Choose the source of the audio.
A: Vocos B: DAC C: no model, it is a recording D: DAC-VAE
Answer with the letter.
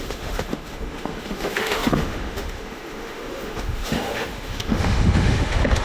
D